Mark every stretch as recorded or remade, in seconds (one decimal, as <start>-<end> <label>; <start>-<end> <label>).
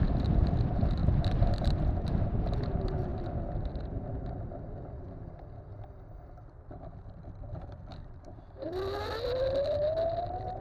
0.0-1.0 recorded; 1.0-2.4 remade; 2.4-7.9 recorded; 7.9-8.8 remade; 8.8-10.6 recorded